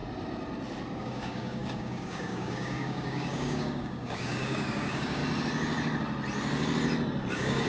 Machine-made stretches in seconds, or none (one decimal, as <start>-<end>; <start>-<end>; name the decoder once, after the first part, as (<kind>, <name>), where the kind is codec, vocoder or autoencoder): 1.0-5.2 (codec, DAC); 7.3-7.7

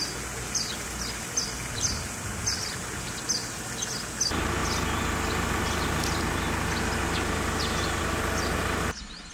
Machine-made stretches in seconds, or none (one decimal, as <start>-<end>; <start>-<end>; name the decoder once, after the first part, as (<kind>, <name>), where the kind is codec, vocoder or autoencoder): none

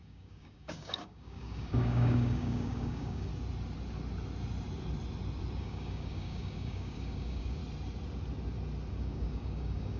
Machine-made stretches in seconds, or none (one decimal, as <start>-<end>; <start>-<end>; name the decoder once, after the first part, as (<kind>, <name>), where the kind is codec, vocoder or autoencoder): 0.0-3.3 (codec, DAC); 5.6-7.6; 8.9-10.0

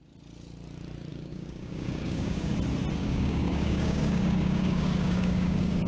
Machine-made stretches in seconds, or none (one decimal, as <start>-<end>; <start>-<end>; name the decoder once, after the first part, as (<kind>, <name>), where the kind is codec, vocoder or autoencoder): 1.1-2.5 (codec, DAC); 3.0-5.9

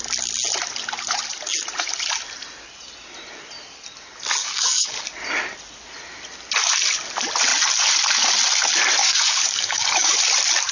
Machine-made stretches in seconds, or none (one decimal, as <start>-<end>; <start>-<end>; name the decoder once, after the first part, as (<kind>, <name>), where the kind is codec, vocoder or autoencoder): 4.4-5.0 (codec, DAC); 9.0-10.2

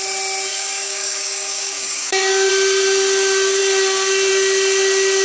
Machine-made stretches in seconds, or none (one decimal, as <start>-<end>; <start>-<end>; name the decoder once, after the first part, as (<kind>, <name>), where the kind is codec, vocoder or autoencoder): 0.5-2.5 (codec, DAC)